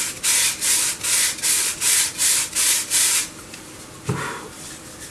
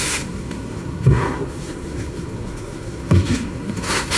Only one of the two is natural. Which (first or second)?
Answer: first